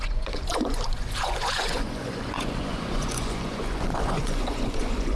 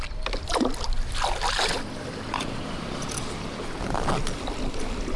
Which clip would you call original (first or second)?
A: second